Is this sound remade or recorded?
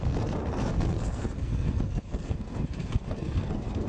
remade